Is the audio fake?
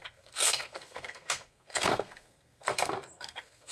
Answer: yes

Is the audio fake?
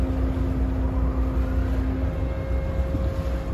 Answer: no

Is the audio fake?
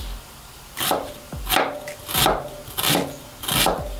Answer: no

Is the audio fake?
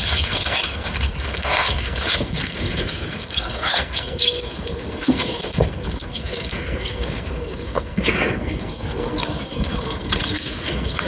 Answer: yes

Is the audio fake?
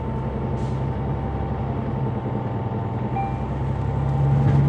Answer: no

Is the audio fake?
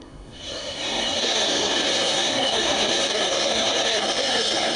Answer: yes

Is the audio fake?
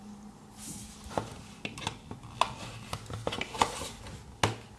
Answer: no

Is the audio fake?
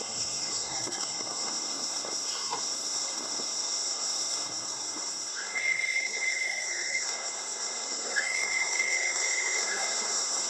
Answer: yes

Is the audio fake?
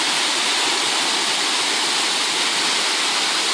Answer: no